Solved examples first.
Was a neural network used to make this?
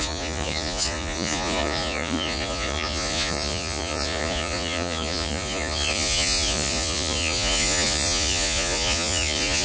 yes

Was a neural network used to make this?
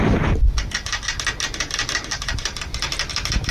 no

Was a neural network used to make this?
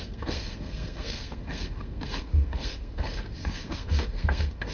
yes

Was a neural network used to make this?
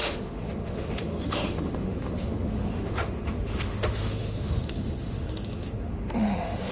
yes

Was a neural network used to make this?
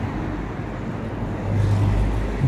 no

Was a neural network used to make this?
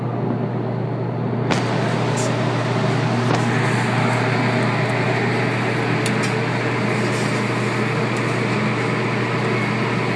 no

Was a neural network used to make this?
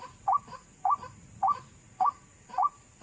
yes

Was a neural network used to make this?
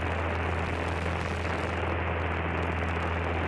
no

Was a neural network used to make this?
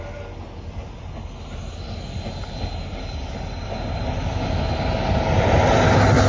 no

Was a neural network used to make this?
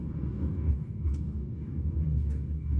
yes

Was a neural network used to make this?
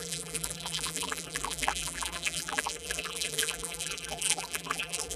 yes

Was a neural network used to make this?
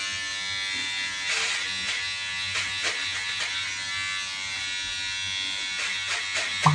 no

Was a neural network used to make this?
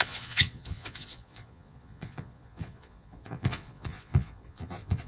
yes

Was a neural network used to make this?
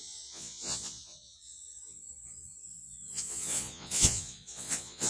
yes